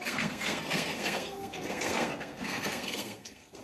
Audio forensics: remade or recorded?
remade